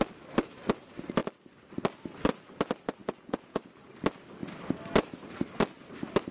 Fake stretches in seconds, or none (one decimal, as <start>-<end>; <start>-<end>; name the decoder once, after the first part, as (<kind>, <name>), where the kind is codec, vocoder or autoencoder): 3.0-3.6 (vocoder, Vocos)